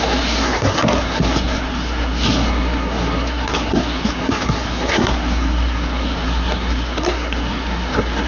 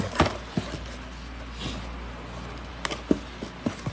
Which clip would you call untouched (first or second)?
second